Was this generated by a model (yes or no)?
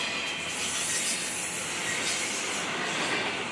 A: no